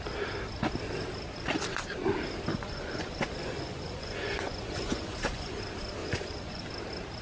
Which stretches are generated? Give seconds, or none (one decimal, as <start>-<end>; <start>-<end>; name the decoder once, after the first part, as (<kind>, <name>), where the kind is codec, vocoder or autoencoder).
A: 2.5-5.6 (vocoder, Vocos); 6.0-6.7